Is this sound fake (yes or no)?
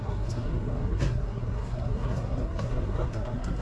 yes